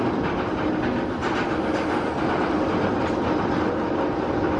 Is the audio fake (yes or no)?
no